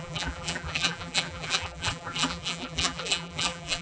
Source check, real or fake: fake